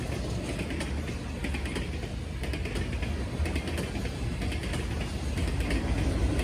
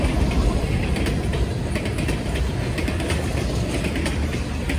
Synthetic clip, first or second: second